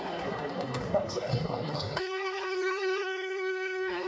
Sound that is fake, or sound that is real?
fake